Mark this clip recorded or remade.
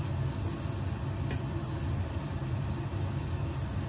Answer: recorded